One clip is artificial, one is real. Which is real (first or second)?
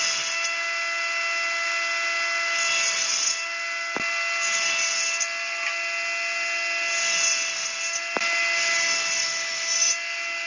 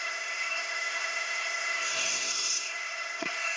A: first